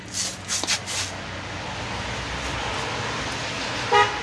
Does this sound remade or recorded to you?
recorded